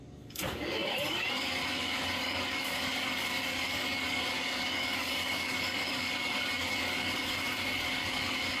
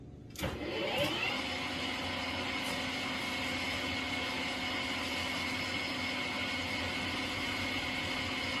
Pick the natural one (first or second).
second